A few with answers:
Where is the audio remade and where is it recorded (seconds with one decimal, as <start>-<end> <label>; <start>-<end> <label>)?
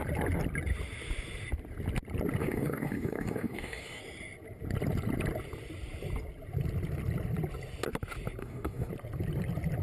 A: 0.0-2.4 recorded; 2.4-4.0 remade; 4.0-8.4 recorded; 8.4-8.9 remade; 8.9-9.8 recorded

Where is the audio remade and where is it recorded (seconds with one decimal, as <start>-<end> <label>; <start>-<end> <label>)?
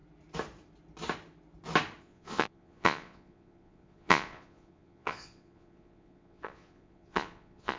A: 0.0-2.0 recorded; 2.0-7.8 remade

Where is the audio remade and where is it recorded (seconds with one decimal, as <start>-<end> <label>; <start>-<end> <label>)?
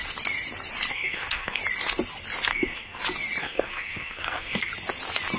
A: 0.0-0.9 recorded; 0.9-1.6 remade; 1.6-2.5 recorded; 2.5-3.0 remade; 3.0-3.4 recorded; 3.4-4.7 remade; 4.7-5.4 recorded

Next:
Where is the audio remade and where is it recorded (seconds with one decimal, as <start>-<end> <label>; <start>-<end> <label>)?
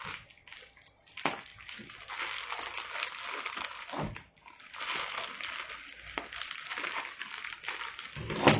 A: 0.0-8.6 recorded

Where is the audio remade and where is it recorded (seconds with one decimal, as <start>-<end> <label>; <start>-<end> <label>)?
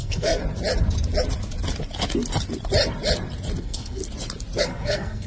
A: 0.0-0.4 remade; 0.4-3.6 recorded; 3.6-4.0 remade; 4.0-4.6 recorded; 4.6-5.3 remade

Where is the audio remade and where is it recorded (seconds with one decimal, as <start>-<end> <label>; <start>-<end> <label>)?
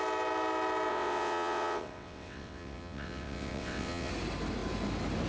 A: 0.0-0.9 recorded; 0.9-4.1 remade; 4.1-5.3 recorded